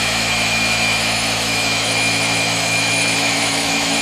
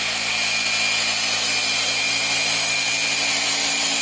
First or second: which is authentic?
second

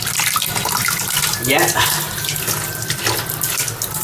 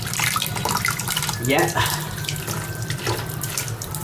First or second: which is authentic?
first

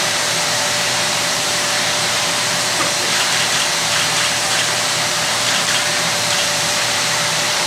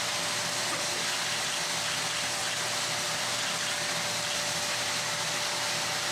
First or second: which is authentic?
second